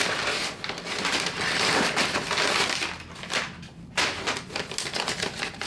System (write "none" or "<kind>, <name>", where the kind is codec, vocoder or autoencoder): none